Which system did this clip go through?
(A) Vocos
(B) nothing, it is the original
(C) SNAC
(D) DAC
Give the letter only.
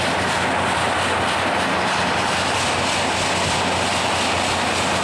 B